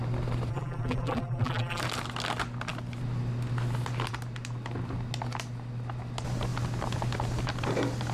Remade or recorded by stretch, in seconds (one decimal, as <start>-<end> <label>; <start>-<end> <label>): 0.0-0.5 recorded; 0.5-1.8 remade; 1.8-8.1 recorded